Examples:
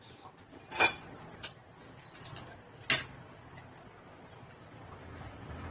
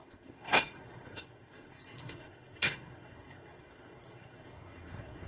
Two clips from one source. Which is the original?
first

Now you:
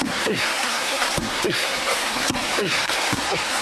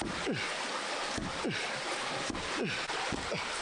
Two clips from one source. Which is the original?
second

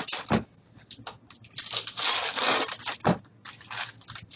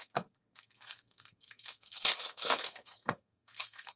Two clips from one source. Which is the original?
first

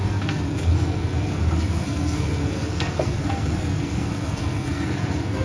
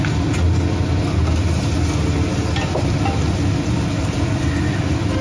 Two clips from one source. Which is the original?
second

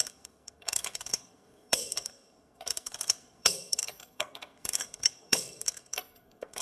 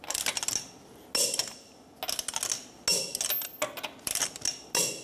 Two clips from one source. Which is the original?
second